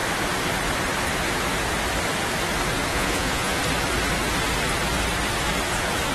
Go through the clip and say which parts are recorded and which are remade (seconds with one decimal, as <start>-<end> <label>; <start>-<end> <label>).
0.0-2.9 recorded; 2.9-3.6 remade; 3.6-6.1 recorded